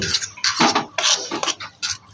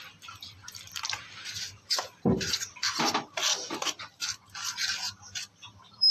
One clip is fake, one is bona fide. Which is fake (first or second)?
second